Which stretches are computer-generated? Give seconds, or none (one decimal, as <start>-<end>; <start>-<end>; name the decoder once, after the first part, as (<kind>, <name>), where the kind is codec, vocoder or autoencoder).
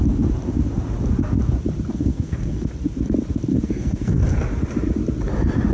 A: 1.9-2.7 (codec, SNAC); 3.5-4.2